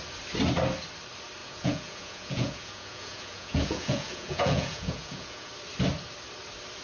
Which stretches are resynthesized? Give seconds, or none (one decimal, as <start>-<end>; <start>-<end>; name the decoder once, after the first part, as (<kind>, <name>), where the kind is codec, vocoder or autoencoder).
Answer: 1.4-5.5 (vocoder, Vocos)

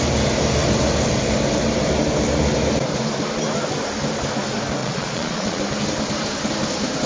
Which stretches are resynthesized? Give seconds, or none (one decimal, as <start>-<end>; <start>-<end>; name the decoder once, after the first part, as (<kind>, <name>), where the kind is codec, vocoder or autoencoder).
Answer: 4.8-5.6 (vocoder, Vocos)

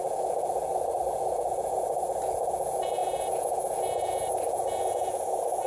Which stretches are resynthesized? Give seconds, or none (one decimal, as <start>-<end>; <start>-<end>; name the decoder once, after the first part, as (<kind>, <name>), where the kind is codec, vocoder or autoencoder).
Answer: 0.0-5.7 (vocoder, Vocos)

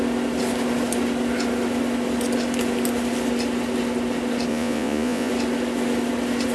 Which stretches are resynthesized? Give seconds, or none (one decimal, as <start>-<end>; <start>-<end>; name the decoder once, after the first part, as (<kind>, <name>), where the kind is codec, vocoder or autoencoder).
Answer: 4.5-5.3 (vocoder, Vocos)